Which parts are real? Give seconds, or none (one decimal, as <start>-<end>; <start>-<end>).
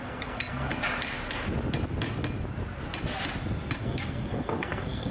0.7-3.8